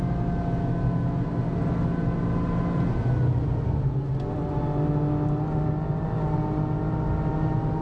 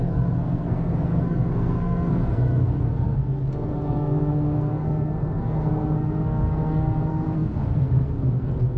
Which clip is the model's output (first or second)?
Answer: second